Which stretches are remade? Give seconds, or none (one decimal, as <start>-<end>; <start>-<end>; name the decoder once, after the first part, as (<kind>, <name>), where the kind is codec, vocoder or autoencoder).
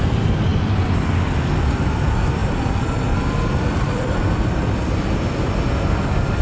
none